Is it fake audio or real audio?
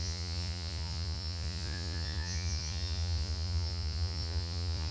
fake